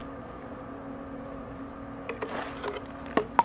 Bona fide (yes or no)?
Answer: yes